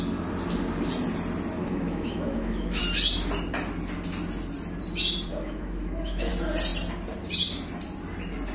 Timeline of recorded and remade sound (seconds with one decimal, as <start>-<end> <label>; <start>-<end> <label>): 0.0-1.6 recorded; 1.6-2.8 remade; 2.8-5.3 recorded; 5.3-6.3 remade; 6.3-8.5 recorded